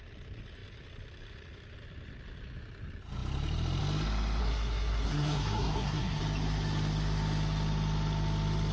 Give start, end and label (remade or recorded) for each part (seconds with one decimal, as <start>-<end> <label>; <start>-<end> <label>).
0.0-4.4 recorded; 4.4-6.2 remade; 6.2-8.7 recorded